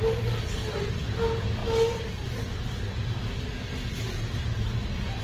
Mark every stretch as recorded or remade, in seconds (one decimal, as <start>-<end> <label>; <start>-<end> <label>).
0.0-5.2 recorded